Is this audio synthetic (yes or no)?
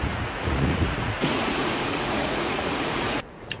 yes